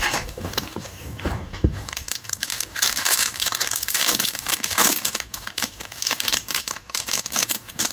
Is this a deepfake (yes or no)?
yes